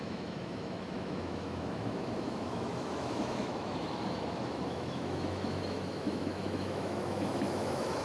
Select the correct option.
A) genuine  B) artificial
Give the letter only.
B